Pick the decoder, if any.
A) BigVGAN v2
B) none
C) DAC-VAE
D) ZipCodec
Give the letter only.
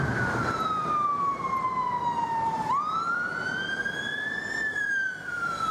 A